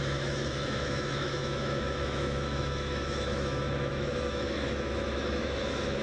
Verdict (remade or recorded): remade